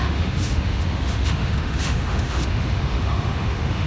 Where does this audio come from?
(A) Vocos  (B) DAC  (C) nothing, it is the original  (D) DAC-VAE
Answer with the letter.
D